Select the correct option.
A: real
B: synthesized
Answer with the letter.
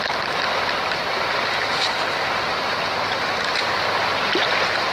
B